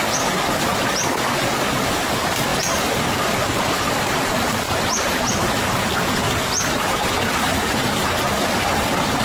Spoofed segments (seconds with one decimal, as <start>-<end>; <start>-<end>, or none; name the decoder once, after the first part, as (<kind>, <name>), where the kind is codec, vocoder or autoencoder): 2.5-5.6 (vocoder, BigVGAN v2)